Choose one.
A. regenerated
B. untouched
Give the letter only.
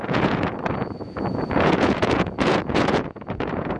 A